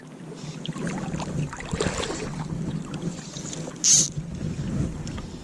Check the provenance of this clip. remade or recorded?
recorded